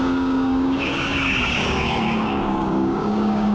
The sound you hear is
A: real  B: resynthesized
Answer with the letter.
B